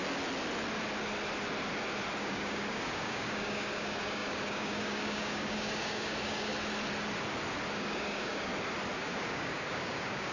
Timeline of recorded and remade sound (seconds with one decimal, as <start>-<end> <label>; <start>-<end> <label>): 0.0-2.2 recorded; 2.2-6.5 remade; 6.5-7.7 recorded; 7.7-8.5 remade; 8.5-9.0 recorded; 9.0-10.3 remade

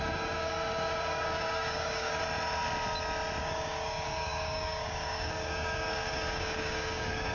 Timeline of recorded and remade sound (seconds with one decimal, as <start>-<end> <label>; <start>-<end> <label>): 0.0-2.2 remade; 2.2-3.4 recorded; 3.4-7.3 remade

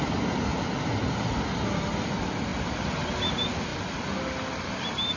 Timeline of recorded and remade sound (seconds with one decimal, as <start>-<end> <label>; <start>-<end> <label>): 0.0-5.2 recorded

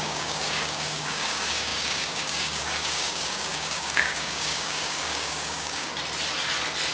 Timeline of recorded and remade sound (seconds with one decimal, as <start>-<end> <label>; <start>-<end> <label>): 0.0-5.9 remade; 5.9-6.9 recorded

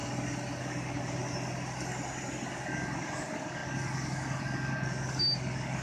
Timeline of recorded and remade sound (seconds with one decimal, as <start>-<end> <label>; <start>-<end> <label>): 0.0-0.6 recorded; 0.6-1.2 remade; 1.2-2.5 recorded; 2.5-5.8 remade